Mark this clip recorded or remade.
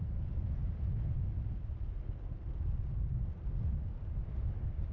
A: recorded